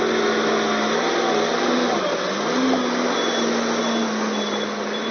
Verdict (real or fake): real